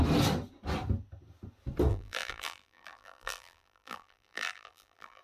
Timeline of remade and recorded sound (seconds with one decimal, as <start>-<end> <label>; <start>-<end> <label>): 0.0-1.9 recorded; 1.9-5.2 remade